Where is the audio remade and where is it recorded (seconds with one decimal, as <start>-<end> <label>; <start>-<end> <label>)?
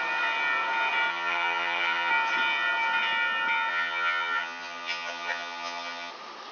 0.0-1.1 recorded; 1.1-2.1 remade; 2.1-3.7 recorded; 3.7-6.1 remade; 6.1-6.5 recorded